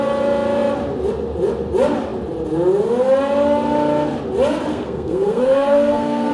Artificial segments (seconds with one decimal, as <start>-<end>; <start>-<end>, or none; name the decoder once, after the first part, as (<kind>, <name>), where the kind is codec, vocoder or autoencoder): 4.7-6.3 (codec, SNAC)